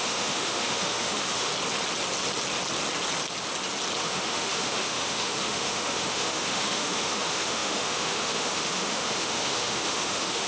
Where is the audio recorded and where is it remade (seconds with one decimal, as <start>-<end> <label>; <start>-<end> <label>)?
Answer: 0.0-1.5 remade; 1.5-4.0 recorded; 4.0-10.5 remade